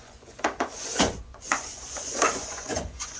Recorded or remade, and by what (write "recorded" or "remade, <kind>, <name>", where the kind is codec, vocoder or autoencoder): remade, vocoder, Vocos